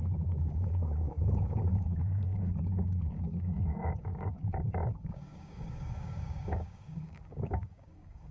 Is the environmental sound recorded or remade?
remade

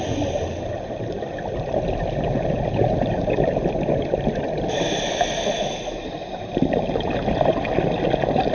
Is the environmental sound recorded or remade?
recorded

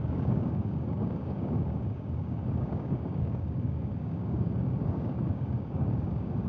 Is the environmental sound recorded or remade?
remade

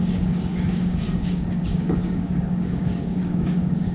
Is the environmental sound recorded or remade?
remade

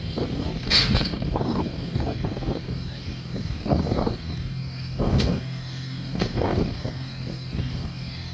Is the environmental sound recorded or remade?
remade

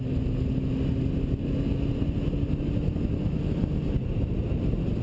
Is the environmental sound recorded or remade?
recorded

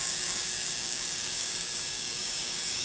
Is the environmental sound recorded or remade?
remade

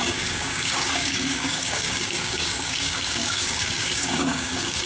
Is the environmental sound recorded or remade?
remade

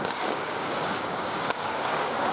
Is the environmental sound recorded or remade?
remade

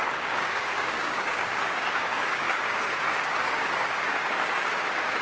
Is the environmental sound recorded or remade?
remade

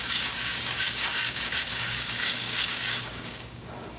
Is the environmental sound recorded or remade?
remade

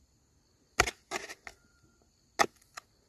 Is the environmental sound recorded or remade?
recorded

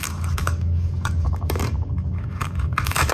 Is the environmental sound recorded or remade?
remade